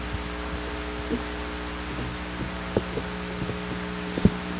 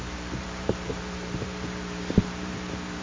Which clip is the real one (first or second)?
first